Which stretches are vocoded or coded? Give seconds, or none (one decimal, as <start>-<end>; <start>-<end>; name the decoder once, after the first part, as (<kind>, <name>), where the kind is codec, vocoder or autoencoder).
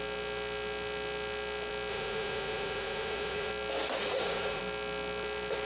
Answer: 1.9-3.5 (vocoder, Vocos); 4.0-4.6